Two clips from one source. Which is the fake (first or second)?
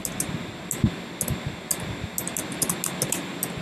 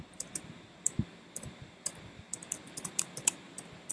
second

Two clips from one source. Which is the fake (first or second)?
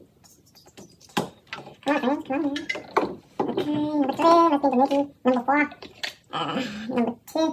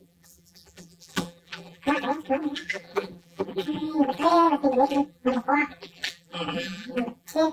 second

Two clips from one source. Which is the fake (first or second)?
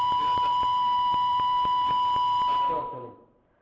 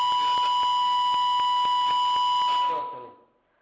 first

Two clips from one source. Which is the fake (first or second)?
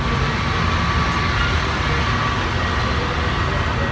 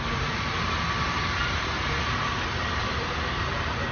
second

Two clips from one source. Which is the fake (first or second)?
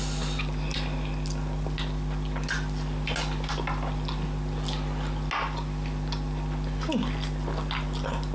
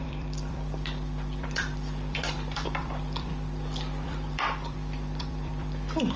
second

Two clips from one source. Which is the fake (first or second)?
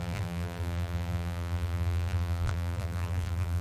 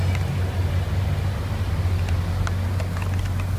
first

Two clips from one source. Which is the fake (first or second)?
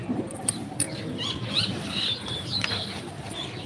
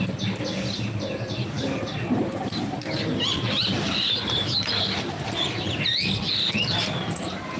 first